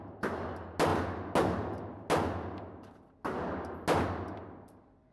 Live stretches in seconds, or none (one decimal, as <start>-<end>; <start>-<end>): 0.0-5.1